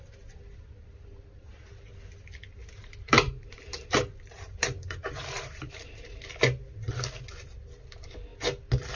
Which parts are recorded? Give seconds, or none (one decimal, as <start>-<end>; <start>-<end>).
0.0-2.6; 6.1-9.0